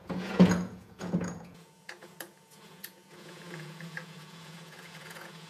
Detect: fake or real fake